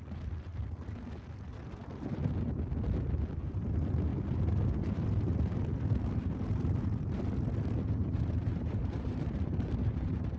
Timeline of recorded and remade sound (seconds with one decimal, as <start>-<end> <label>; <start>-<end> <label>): 0.0-8.0 recorded; 8.0-10.4 remade